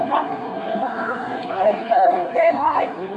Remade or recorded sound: remade